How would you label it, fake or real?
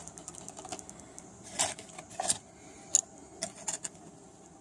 real